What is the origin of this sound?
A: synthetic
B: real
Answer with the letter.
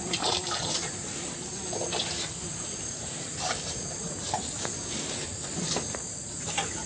A